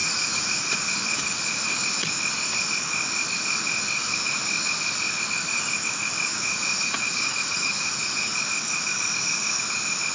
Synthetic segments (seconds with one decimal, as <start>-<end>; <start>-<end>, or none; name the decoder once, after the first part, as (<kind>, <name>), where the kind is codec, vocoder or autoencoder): 0.0-0.9 (vocoder, Vocos); 6.3-8.3